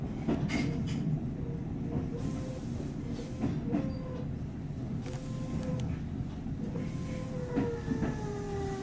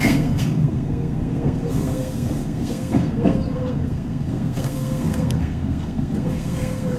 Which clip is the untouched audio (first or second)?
first